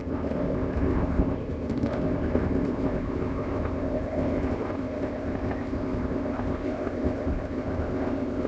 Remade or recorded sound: remade